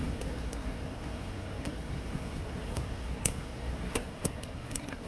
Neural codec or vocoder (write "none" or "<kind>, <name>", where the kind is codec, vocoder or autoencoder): codec, SNAC